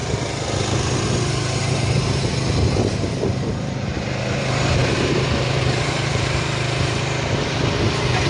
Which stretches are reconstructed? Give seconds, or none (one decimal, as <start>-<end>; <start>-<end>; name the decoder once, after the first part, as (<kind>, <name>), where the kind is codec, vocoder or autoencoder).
0.0-2.3 (vocoder, BigVGAN v2); 2.9-8.3